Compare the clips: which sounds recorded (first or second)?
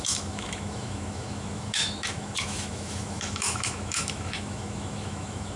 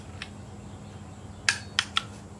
second